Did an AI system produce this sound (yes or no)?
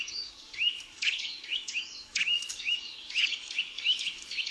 yes